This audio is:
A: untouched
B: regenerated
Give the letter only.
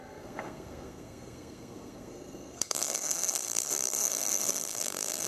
B